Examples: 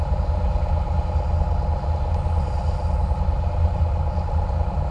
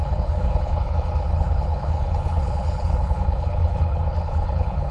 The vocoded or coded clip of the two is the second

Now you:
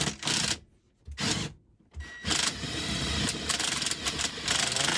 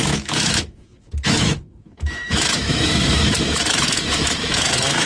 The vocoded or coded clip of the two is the second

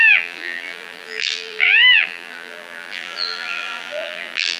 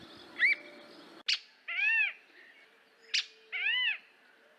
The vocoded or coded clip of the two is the first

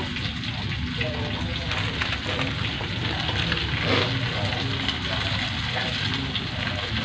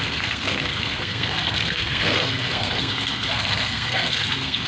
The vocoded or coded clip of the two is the second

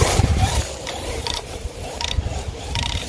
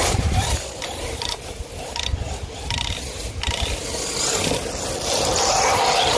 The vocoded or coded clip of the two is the first